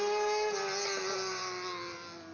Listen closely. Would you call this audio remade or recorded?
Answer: recorded